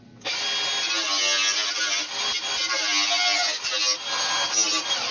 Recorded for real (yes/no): yes